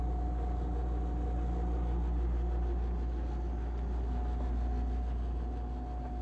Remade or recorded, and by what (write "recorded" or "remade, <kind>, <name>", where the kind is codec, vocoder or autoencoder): recorded